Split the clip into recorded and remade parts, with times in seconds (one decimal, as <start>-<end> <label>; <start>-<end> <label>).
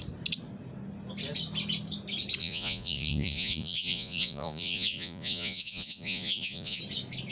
0.0-2.4 recorded; 2.4-6.8 remade; 6.8-7.3 recorded